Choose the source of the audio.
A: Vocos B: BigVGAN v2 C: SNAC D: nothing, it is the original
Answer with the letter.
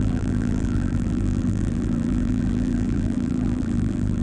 B